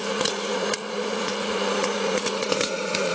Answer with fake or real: fake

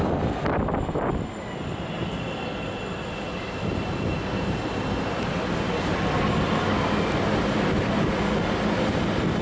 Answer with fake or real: real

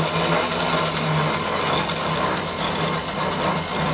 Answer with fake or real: real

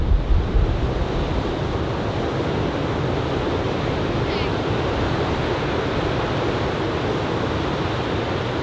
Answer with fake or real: real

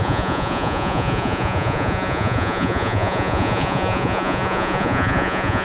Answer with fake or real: fake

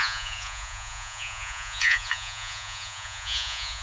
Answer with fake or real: fake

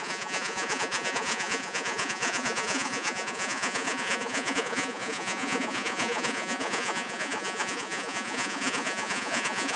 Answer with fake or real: fake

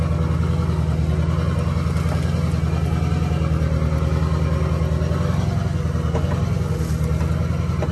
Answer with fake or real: real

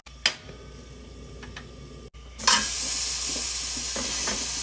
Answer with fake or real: real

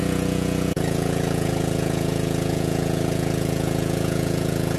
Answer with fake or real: fake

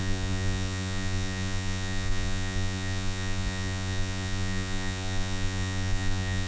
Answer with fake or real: fake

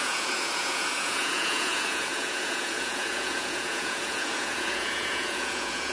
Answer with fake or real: fake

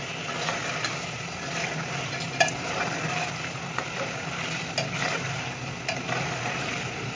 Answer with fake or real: real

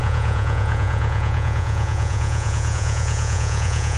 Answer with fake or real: fake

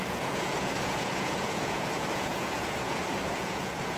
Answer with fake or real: fake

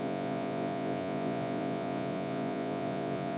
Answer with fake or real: fake